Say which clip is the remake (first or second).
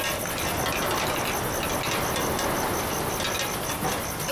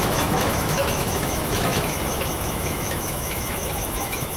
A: second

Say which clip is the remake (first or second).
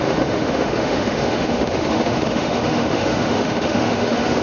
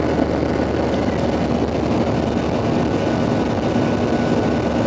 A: first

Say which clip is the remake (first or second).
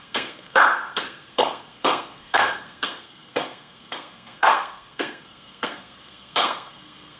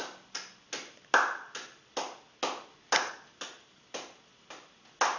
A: first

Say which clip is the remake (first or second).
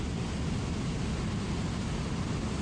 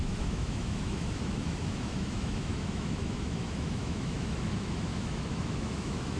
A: second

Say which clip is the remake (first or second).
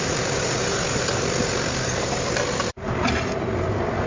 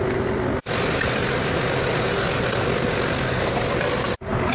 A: first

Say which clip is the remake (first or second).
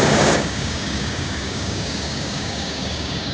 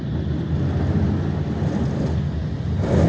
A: first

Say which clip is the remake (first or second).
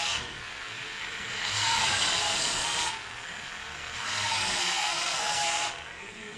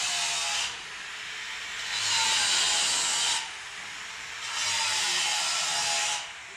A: first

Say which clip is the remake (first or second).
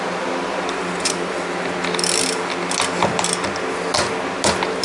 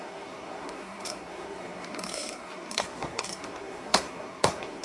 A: second